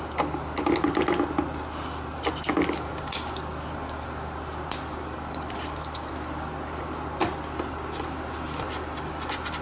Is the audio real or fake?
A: real